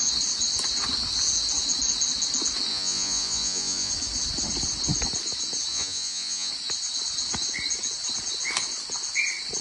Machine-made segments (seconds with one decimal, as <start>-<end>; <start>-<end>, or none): 2.7-3.9; 5.7-6.5